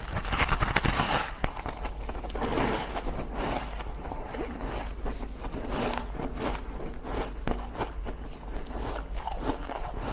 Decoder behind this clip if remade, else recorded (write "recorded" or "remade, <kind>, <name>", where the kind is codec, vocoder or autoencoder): recorded